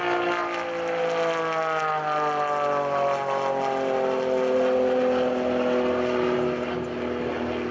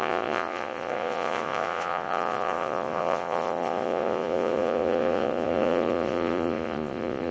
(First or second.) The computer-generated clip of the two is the second